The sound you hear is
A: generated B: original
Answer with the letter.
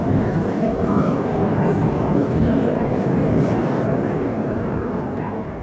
A